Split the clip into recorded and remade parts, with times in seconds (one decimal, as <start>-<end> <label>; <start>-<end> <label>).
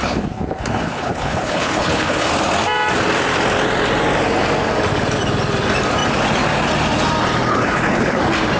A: 0.0-2.3 remade; 2.3-7.5 recorded; 7.5-8.2 remade; 8.2-8.6 recorded